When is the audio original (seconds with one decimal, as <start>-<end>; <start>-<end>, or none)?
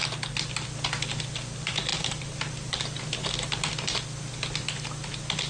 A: 0.0-1.9; 3.0-5.5